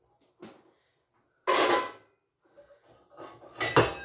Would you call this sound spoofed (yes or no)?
no